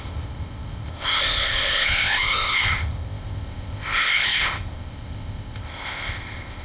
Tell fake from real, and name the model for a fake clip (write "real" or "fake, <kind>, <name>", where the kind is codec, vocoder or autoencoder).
fake, codec, ZipCodec